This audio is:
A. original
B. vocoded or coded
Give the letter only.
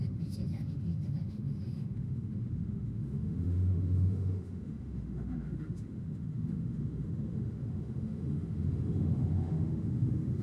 B